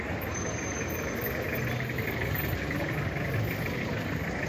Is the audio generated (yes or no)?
no